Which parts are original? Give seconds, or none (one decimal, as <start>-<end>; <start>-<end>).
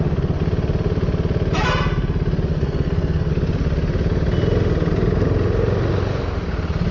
0.0-2.5; 3.3-6.9